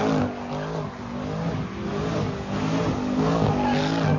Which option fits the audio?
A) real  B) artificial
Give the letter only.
A